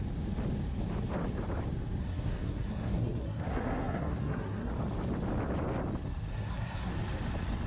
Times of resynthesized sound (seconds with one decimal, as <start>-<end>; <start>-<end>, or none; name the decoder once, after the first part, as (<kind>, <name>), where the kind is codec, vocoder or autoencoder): 2.0-4.7 (codec, SNAC); 6.3-6.9